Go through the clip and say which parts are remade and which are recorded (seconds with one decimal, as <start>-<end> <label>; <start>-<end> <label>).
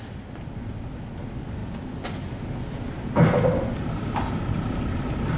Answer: 0.0-5.4 recorded